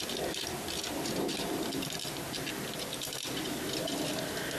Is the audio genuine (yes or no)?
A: yes